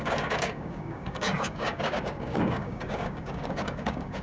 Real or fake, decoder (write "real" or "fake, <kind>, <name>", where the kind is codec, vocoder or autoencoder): fake, codec, DAC